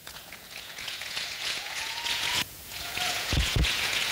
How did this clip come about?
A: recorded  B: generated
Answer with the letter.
B